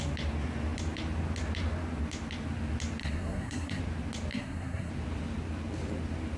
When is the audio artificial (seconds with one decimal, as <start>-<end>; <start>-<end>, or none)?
3.0-3.8; 4.3-4.9